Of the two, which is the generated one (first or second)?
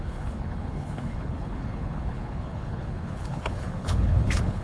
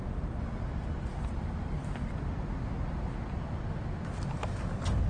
first